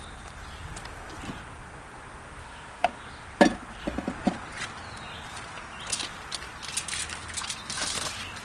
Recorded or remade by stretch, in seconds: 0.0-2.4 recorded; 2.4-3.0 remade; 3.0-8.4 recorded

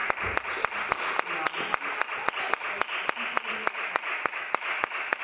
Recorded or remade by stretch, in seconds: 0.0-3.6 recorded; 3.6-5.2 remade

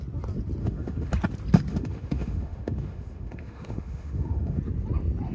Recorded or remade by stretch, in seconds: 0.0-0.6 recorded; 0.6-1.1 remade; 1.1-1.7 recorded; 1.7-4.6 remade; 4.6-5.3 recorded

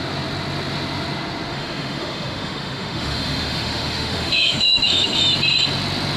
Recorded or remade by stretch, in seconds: 0.0-1.5 recorded; 1.5-5.2 remade; 5.2-6.2 recorded

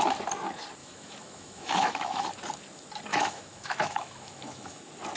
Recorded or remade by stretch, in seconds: 0.0-0.8 recorded; 0.8-2.2 remade; 2.2-3.1 recorded; 3.1-4.8 remade; 4.8-5.2 recorded